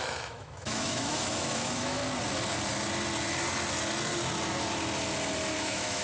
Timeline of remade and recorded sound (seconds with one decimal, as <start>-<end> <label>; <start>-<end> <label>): 0.0-2.0 remade; 2.0-5.6 recorded; 5.6-6.0 remade

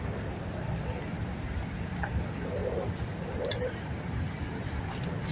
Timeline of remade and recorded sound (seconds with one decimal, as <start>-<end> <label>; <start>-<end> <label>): 0.0-5.3 recorded

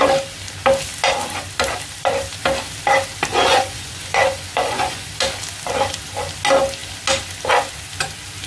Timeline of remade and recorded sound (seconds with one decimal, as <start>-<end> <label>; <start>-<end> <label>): 0.0-3.3 recorded; 3.3-5.1 remade; 5.1-8.5 recorded

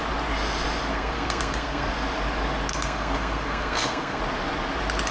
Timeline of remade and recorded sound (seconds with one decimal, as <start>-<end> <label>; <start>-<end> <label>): 0.0-0.9 recorded; 0.9-1.9 remade; 1.9-2.7 recorded; 2.7-4.2 remade; 4.2-5.1 recorded

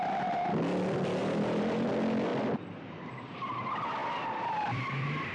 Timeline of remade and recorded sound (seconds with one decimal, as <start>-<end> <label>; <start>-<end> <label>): 0.0-1.2 recorded; 1.2-1.9 remade; 1.9-2.3 recorded; 2.3-3.6 remade; 3.6-4.0 recorded; 4.0-5.3 remade

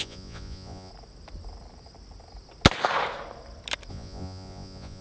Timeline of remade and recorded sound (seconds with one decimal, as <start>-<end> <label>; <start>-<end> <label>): 0.0-0.9 remade; 0.9-3.9 recorded; 3.9-5.0 remade

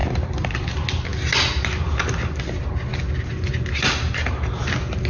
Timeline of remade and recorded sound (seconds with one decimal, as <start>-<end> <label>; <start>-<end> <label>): 0.0-0.7 remade; 0.7-5.1 recorded

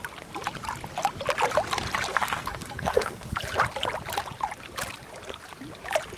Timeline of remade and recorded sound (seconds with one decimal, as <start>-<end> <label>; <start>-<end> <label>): 0.0-2.1 recorded; 2.1-3.3 remade; 3.3-6.2 recorded